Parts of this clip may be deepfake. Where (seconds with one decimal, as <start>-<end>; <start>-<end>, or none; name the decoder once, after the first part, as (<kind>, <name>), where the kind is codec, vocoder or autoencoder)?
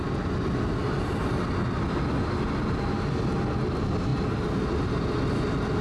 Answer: none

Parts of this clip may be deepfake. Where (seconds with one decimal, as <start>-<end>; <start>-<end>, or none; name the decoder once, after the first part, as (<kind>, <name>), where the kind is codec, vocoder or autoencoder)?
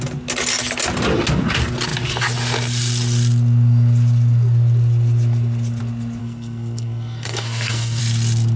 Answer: 6.2-8.0 (codec, SNAC)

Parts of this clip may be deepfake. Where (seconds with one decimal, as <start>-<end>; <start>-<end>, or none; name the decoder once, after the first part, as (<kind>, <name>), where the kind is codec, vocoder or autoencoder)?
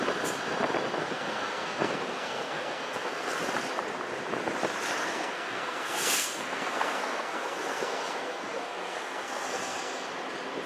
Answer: 1.0-3.4 (codec, SNAC); 5.0-10.1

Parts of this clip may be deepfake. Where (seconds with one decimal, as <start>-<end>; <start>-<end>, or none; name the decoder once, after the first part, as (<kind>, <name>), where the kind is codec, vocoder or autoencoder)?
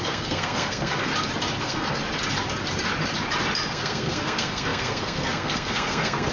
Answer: 0.0-1.1 (codec, SNAC); 1.6-2.0; 3.7-6.3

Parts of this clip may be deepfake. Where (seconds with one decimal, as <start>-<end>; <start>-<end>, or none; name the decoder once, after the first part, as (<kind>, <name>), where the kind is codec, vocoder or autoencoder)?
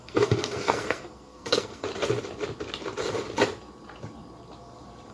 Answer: 0.0-1.9 (codec, SNAC)